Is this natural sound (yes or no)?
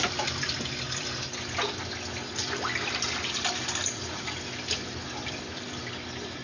no